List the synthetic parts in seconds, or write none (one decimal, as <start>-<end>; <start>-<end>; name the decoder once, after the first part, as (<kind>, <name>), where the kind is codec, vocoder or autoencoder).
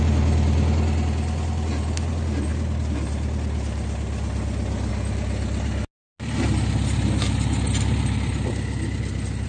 none